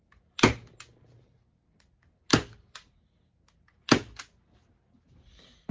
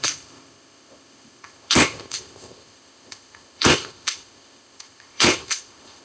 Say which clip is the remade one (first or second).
second